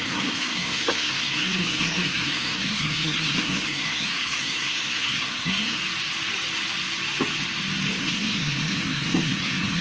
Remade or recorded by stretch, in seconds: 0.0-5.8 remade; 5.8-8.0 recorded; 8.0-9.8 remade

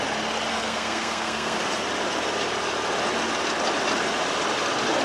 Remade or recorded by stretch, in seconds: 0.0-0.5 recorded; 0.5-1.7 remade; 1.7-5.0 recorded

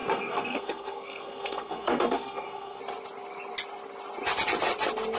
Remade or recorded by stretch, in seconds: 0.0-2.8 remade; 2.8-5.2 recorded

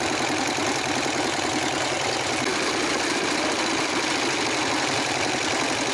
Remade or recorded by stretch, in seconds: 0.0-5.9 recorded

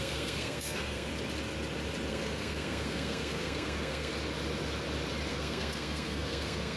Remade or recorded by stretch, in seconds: 0.0-1.1 remade; 1.1-2.1 recorded; 2.1-4.1 remade; 4.1-5.3 recorded; 5.3-6.8 remade

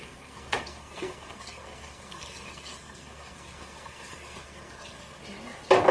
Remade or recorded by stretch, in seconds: 0.0-5.2 remade; 5.2-5.9 recorded